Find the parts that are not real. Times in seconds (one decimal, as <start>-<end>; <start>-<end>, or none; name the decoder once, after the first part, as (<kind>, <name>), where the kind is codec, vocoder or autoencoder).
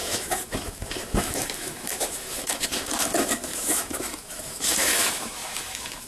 0.0-6.1 (autoencoder, DAC-VAE)